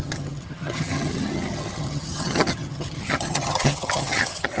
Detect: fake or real fake